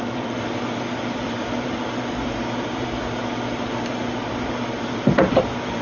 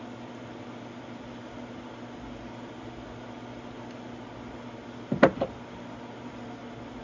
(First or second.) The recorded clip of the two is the second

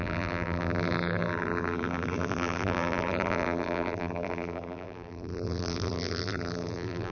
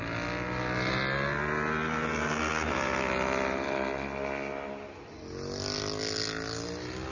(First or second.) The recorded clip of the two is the second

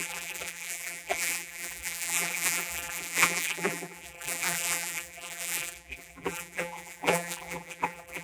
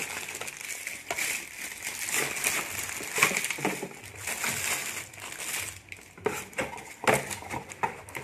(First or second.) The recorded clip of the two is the second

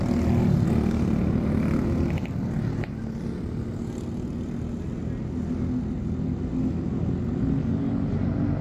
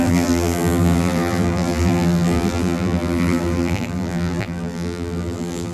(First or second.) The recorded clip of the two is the first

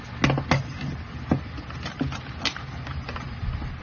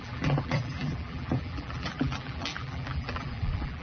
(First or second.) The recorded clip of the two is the first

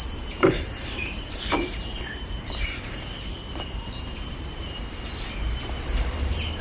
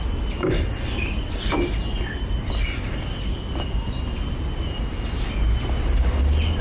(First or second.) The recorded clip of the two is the second